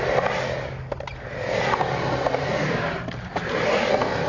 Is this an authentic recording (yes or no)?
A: yes